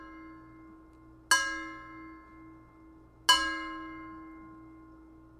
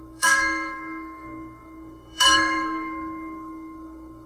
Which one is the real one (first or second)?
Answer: first